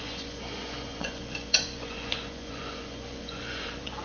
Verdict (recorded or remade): remade